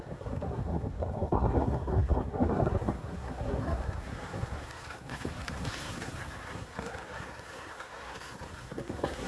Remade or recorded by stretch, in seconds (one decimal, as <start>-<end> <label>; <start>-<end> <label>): 0.0-9.3 remade